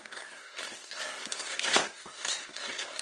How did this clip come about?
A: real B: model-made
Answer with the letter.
B